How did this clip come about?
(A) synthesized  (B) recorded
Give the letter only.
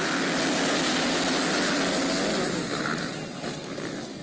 B